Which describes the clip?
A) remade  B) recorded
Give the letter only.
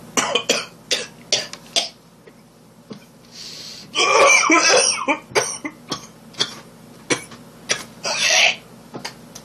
B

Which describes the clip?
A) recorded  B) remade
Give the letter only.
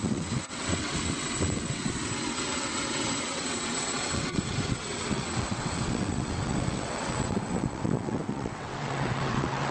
B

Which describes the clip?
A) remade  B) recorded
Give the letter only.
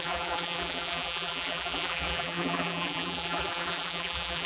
A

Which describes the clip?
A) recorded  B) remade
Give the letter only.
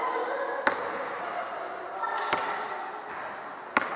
A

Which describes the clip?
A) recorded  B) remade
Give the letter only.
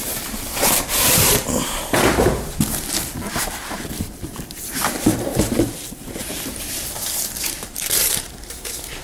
B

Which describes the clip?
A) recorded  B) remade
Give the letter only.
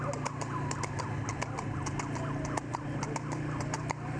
A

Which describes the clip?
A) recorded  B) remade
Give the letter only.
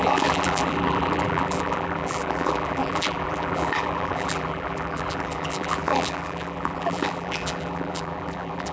B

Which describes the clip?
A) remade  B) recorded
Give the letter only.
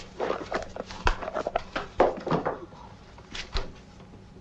B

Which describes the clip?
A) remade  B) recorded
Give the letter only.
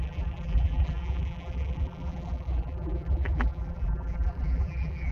A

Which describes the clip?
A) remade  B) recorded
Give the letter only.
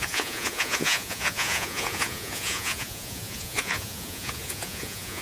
A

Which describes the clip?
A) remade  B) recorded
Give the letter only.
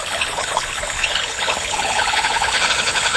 A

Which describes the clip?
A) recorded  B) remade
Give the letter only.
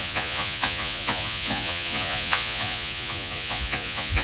B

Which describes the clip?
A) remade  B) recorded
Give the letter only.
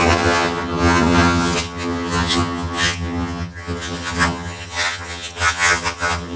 A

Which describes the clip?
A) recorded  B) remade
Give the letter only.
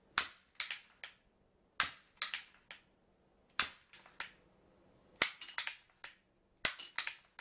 A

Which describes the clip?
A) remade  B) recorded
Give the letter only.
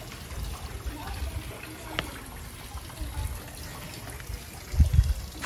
B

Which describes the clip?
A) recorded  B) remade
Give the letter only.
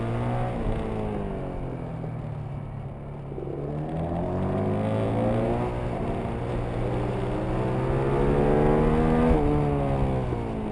A